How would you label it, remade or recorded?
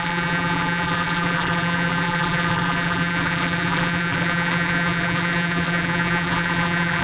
remade